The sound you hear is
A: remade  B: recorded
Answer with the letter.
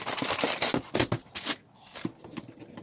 B